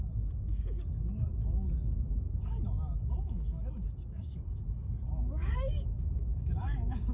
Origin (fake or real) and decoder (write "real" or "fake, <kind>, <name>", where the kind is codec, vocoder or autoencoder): fake, codec, DAC